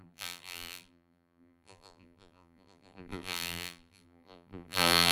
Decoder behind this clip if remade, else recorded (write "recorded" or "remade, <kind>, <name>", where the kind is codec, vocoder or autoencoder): remade, vocoder, BigVGAN v2